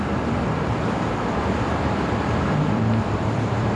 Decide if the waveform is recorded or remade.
remade